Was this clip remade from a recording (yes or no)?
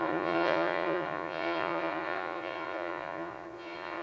yes